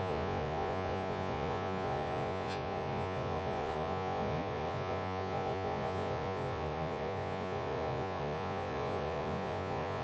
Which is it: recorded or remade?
remade